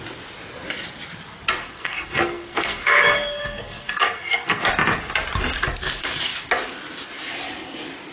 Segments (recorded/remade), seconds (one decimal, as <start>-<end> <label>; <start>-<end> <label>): 0.0-1.6 recorded; 1.6-4.7 remade; 4.7-8.1 recorded